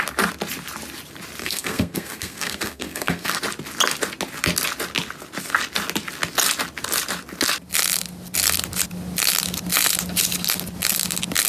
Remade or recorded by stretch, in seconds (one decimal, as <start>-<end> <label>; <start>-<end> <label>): 0.0-1.4 recorded; 1.4-3.4 remade; 3.4-11.5 recorded